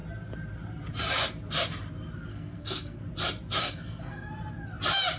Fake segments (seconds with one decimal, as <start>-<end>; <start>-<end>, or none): 2.3-3.0; 3.6-4.3